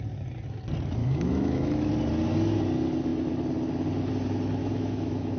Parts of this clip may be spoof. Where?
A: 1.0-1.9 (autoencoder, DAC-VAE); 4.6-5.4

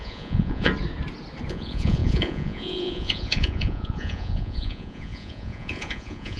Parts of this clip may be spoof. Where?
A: 0.0-0.7 (vocoder, Vocos); 1.5-6.4

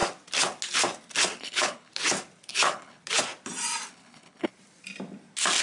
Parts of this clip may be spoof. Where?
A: 1.4-1.9 (codec, HILCodec); 2.5-3.0; 3.9-4.5

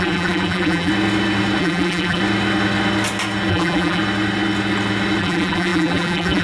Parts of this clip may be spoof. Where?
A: 0.0-0.9 (vocoder, BigVGAN v2); 1.6-2.2; 3.5-4.0; 5.2-6.4